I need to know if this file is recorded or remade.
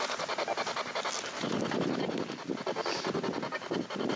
recorded